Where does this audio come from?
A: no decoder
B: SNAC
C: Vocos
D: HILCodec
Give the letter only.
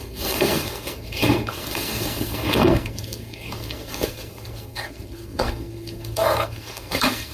B